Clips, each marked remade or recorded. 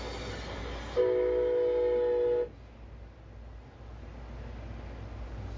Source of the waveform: recorded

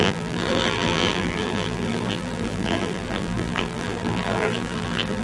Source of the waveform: remade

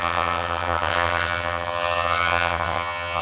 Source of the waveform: remade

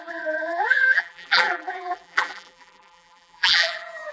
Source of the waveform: remade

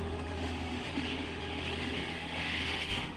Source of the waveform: remade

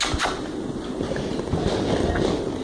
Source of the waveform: recorded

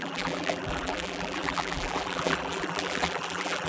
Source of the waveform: remade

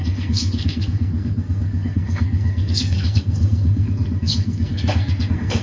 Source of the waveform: remade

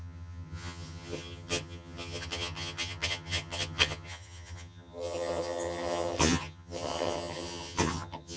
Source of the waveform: remade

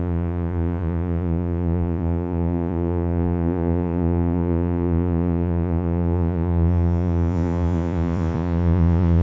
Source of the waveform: remade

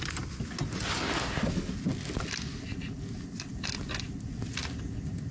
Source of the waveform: recorded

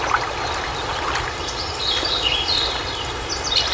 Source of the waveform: remade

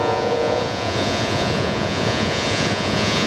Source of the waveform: remade